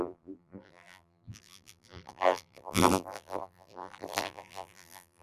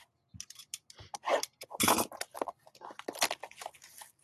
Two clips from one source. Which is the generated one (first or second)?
first